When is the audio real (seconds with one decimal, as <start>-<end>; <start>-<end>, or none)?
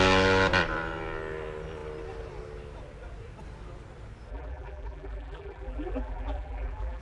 0.0-4.3